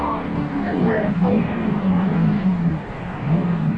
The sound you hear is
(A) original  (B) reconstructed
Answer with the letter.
B